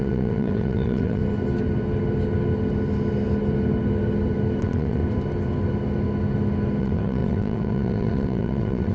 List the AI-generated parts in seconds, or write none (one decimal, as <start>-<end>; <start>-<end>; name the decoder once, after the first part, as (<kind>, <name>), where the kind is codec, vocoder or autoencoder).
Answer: 0.0-1.2 (vocoder, WaveNeXt); 4.6-5.0; 6.8-8.9

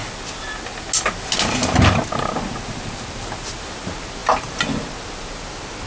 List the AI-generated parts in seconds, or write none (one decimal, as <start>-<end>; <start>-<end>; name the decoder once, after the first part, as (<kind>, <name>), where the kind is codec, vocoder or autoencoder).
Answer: none

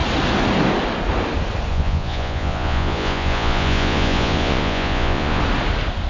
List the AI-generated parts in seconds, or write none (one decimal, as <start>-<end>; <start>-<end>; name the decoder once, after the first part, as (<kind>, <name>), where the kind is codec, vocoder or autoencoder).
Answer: 1.7-5.4 (vocoder, Vocos)

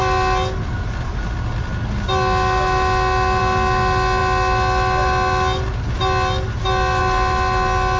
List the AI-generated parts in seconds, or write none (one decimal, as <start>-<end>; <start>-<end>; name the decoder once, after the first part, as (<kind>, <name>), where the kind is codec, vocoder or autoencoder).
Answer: none

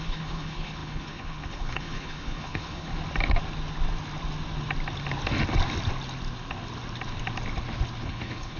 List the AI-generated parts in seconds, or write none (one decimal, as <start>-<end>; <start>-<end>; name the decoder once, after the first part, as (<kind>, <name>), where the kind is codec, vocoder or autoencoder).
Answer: 0.0-2.9 (codec, HILCodec); 8.0-8.6

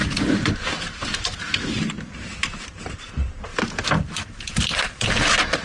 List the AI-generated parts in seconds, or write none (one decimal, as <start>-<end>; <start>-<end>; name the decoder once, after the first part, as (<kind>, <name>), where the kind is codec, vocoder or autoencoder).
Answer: 0.0-1.9 (vocoder, BigVGAN v2); 3.5-4.1

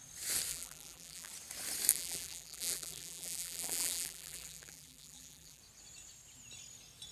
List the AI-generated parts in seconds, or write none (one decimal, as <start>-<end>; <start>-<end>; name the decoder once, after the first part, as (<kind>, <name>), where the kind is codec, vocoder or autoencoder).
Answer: 0.5-1.3 (vocoder, BigVGAN v2); 1.9-5.6